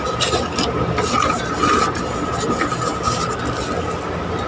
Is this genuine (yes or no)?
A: yes